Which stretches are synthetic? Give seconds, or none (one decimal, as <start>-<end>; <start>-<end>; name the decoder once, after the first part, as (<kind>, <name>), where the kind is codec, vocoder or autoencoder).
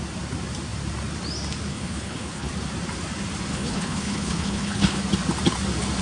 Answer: 1.7-2.5 (codec, HILCodec); 3.5-5.0